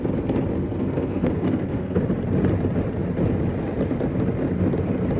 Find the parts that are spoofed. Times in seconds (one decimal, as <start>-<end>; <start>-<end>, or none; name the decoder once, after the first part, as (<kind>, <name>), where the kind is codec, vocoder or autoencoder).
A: 0.6-2.0 (codec, SNAC)